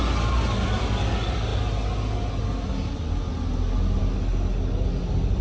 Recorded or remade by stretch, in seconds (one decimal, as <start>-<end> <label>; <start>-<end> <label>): 0.0-5.4 recorded